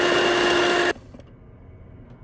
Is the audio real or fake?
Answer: real